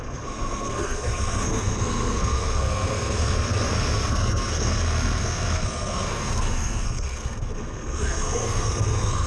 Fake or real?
fake